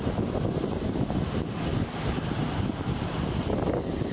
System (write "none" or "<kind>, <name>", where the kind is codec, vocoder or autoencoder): none